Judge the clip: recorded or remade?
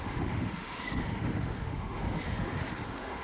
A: remade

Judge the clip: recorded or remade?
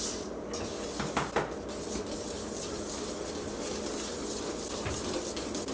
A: recorded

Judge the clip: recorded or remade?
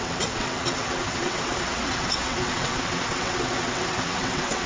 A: remade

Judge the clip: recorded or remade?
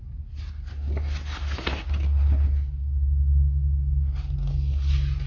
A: recorded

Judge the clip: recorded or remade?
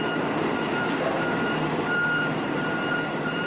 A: remade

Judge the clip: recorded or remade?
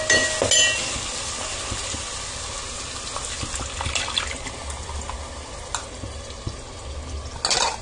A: recorded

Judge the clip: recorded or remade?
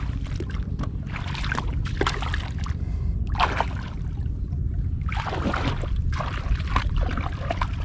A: recorded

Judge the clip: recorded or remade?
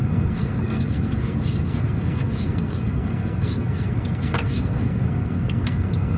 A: remade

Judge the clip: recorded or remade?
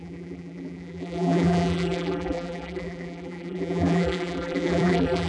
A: remade